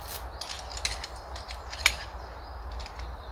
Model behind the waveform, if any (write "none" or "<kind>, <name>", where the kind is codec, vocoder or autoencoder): none